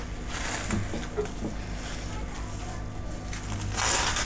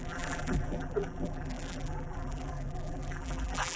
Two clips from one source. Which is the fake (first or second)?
second